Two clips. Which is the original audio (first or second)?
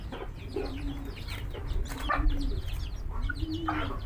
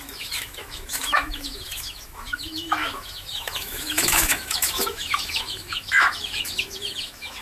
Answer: first